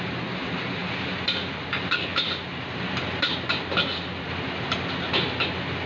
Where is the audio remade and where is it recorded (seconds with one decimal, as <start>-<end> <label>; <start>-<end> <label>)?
0.0-5.9 recorded